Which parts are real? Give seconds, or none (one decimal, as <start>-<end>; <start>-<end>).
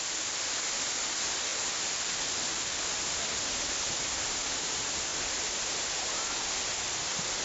0.0-7.4